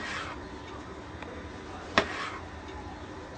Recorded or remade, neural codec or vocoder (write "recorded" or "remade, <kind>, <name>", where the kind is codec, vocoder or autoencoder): remade, vocoder, BigVGAN v2